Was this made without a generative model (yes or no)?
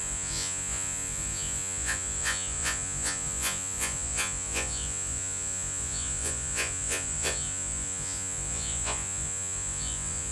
no